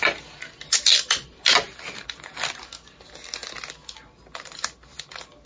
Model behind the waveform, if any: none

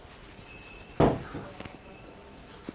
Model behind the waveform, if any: none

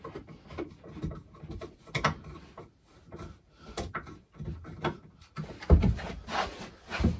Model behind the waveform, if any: none